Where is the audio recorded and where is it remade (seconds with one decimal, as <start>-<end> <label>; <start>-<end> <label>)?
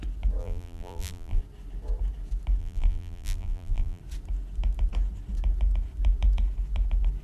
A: 0.0-0.4 recorded; 0.4-1.4 remade; 1.4-2.6 recorded; 2.6-4.0 remade; 4.0-7.2 recorded